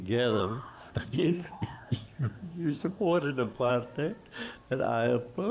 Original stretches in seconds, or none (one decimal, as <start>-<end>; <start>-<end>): 0.0-0.4; 3.7-5.5